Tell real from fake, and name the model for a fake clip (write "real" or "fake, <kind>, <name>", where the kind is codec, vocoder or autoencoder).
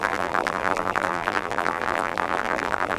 fake, vocoder, BigVGAN v2